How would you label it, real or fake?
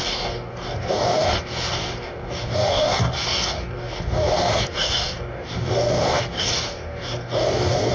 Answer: fake